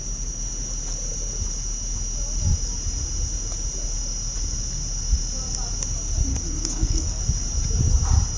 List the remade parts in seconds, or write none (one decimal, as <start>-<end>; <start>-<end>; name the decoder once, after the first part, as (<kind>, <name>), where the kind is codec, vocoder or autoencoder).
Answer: 6.3-7.2 (codec, SNAC)